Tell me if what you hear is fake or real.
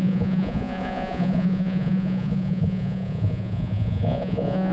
fake